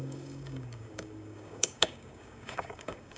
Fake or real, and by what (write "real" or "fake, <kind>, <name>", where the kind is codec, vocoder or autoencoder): fake, codec, DAC